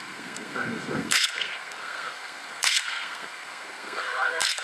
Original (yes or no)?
no